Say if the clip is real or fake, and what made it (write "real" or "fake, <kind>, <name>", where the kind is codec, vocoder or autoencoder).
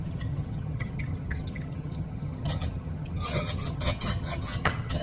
fake, vocoder, HiFi-GAN